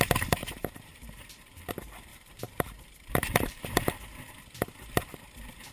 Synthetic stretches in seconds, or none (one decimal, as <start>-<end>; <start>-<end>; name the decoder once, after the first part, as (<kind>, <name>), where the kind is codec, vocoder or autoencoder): 0.4-1.7 (vocoder, BigVGAN v2); 2.1-4.0